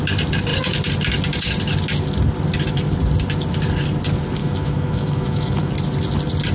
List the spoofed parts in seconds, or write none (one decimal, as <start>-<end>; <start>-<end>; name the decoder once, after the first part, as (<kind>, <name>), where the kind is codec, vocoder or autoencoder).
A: 4.4-5.7 (autoencoder, DAC-VAE)